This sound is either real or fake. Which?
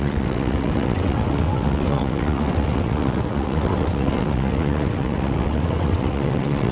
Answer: fake